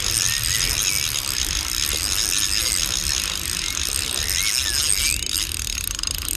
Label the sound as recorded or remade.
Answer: recorded